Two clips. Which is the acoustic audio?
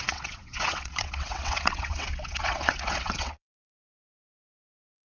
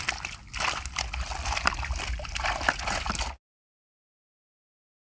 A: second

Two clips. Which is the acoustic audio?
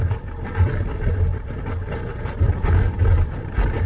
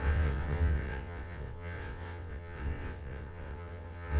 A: first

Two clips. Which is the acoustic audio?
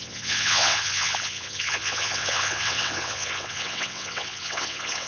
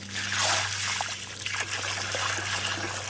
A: second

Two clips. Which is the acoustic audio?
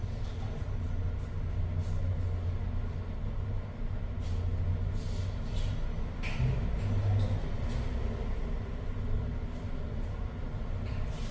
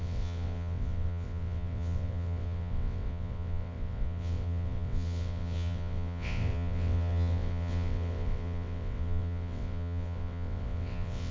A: first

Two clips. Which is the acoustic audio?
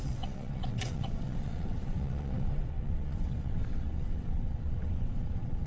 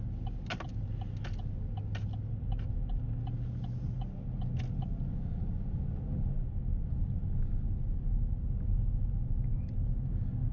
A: second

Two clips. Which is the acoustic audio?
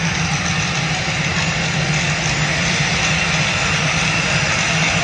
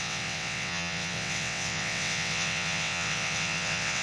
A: first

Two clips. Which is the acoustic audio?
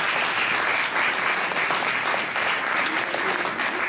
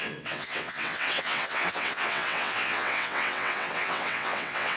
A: first